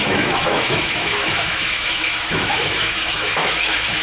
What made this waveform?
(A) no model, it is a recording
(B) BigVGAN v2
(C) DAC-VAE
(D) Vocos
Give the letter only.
C